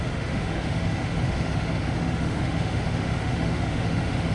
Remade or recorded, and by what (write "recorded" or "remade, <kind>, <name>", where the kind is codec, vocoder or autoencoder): remade, autoencoder, DAC-VAE